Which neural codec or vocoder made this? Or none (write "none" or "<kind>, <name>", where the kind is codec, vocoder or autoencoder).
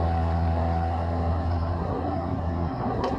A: codec, SNAC